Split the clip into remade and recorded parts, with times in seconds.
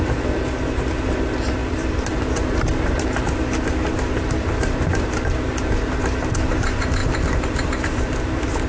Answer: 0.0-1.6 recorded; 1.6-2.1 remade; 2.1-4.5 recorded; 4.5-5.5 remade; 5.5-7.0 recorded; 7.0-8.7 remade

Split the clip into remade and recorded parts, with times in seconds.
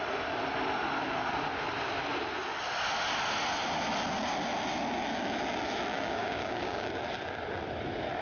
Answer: 0.0-5.9 recorded; 5.9-6.9 remade; 6.9-8.2 recorded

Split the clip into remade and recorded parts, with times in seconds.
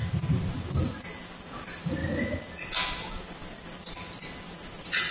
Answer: 0.0-5.1 remade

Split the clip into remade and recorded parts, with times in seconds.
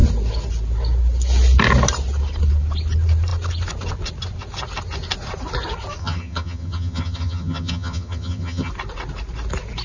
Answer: 0.0-6.0 recorded; 6.0-8.7 remade; 8.7-9.8 recorded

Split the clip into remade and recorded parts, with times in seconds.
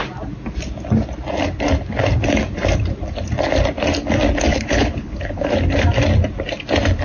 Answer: 0.0-4.5 recorded; 4.5-5.5 remade; 5.5-7.0 recorded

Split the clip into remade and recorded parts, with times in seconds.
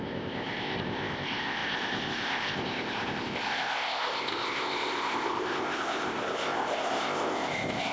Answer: 0.0-7.9 remade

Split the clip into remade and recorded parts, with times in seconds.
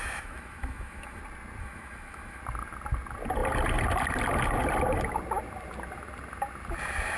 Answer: 0.0-1.2 remade; 1.2-1.6 recorded; 1.6-2.4 remade; 2.4-7.2 recorded